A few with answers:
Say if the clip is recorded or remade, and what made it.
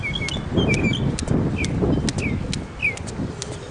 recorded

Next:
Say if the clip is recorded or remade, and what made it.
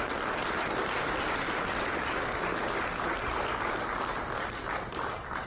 recorded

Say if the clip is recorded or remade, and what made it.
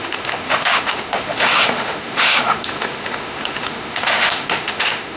remade, autoencoder, DAC-VAE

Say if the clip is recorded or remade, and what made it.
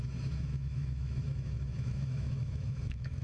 remade, autoencoder, DAC-VAE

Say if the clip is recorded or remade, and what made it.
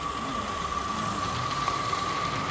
recorded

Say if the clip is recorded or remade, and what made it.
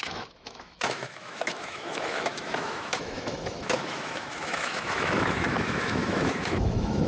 remade, autoencoder, DAC-VAE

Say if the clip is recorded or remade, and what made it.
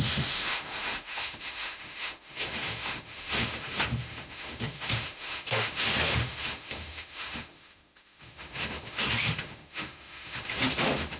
remade, autoencoder, DAC-VAE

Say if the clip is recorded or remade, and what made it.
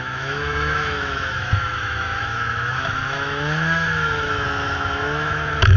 remade, autoencoder, DAC-VAE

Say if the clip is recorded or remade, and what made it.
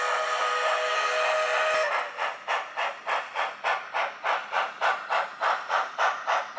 recorded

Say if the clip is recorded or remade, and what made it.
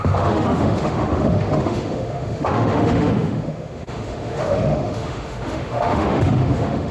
remade, autoencoder, DAC-VAE